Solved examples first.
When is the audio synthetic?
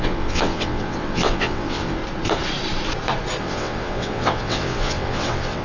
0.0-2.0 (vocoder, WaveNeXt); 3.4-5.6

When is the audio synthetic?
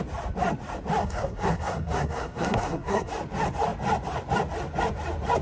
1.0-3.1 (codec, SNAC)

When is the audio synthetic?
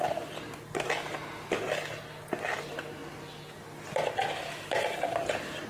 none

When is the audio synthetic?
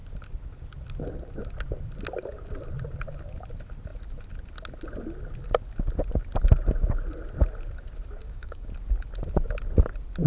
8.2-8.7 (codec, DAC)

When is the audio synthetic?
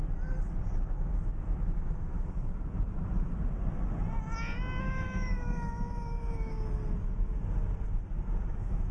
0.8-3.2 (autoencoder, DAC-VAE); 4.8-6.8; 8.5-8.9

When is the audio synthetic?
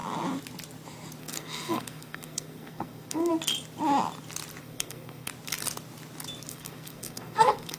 1.2-3.3 (codec, SNAC); 4.6-5.3; 6.5-7.8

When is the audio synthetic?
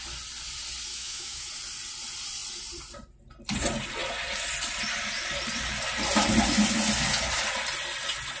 0.9-1.5 (autoencoder, DAC-VAE)